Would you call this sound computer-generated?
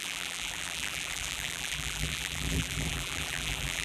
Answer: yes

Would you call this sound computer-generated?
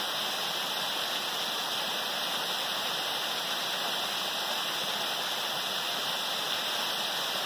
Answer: no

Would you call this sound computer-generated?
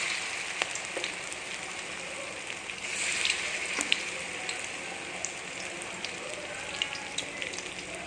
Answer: no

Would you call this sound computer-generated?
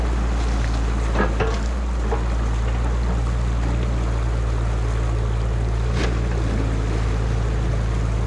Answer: no